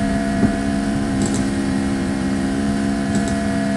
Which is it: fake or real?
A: fake